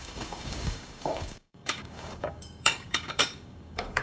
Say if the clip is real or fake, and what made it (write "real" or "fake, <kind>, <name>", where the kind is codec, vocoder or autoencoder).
fake, codec, DAC